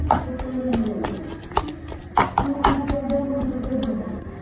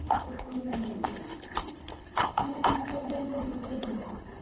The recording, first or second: first